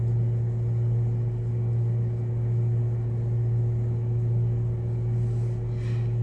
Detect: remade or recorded recorded